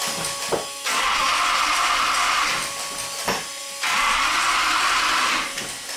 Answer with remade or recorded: recorded